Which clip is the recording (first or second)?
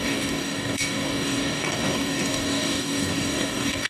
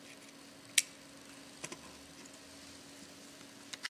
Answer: second